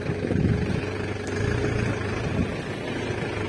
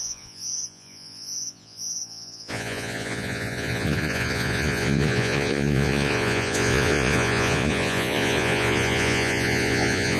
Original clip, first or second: first